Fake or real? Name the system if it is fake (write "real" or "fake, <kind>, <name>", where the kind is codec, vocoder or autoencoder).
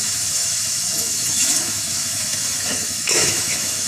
fake, autoencoder, DAC-VAE